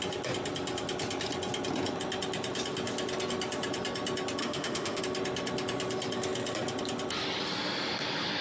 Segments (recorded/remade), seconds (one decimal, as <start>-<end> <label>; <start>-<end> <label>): 0.0-4.4 recorded; 4.4-5.0 remade; 5.0-8.4 recorded

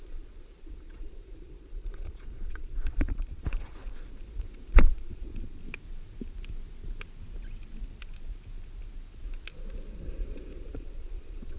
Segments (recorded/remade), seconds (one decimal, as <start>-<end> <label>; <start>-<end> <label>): 0.0-5.6 remade; 5.6-9.9 recorded; 9.9-11.6 remade

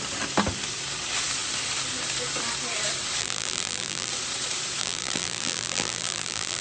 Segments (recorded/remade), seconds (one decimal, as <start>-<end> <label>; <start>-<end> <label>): 0.0-3.2 recorded; 3.2-4.1 remade; 4.1-4.8 recorded; 4.8-6.6 remade

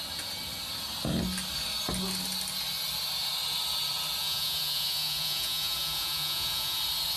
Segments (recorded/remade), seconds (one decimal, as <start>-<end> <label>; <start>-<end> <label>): 0.0-4.2 recorded; 4.2-6.8 remade; 6.8-7.2 recorded

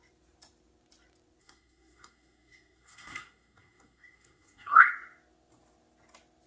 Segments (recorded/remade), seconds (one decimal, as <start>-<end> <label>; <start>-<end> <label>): 0.0-1.4 recorded; 1.4-4.9 remade; 4.9-6.5 recorded

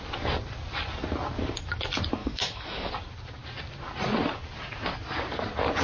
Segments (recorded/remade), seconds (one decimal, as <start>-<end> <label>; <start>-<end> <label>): 0.0-2.2 recorded; 2.2-2.9 remade; 2.9-5.8 recorded

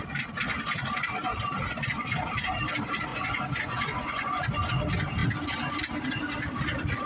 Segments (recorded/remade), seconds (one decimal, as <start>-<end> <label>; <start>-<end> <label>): 0.0-3.1 recorded; 3.1-4.4 remade; 4.4-7.1 recorded